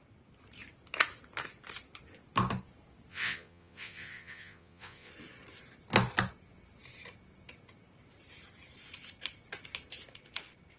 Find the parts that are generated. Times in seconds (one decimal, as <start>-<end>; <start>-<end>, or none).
3.1-5.1